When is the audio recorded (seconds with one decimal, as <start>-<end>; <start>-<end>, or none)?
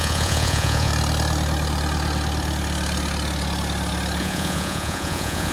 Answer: 0.9-4.2